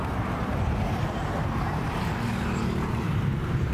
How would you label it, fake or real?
real